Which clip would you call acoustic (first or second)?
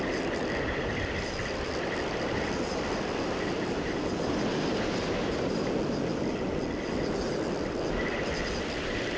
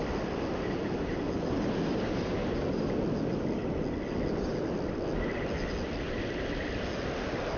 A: second